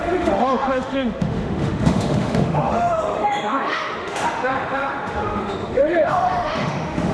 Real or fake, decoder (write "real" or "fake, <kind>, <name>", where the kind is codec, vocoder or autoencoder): fake, autoencoder, DAC-VAE